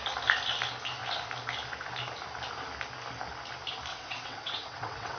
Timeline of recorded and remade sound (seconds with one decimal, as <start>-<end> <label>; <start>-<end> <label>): 0.0-3.9 recorded; 3.9-5.2 remade